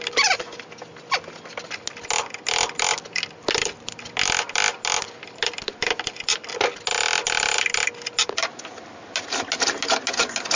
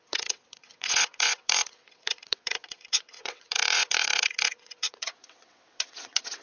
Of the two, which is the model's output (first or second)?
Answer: second